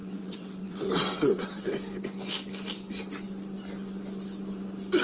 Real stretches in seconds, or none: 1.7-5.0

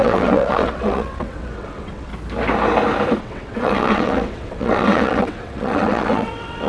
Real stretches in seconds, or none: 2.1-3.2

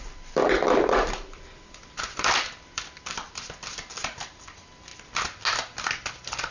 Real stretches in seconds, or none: 3.7-4.2; 4.9-6.1

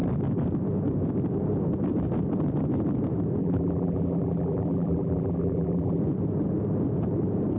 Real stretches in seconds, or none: 0.0-3.4; 6.0-7.6

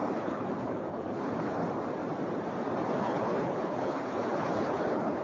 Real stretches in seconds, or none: 1.6-3.0

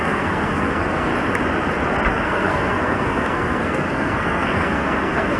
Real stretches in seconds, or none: 1.1-2.1